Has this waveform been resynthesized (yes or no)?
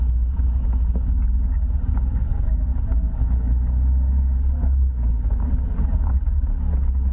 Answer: no